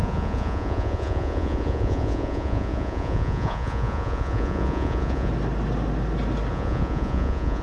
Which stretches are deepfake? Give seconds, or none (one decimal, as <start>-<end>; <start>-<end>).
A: 0.0-5.3; 6.5-7.6